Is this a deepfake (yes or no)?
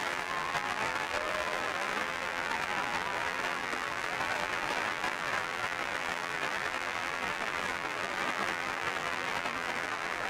yes